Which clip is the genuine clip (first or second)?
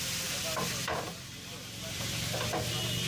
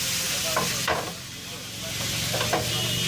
second